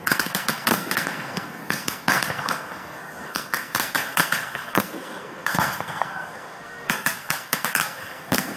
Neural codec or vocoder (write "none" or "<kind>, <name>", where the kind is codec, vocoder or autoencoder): codec, SNAC